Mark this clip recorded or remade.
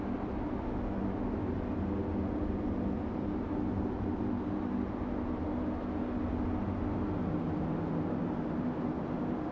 recorded